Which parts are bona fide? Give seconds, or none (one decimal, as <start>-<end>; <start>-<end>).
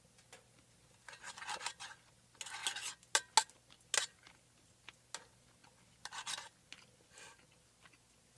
0.0-8.4